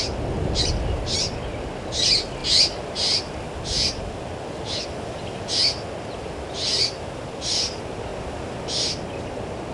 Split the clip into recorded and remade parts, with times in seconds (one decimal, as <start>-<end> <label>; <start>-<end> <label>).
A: 0.0-9.7 recorded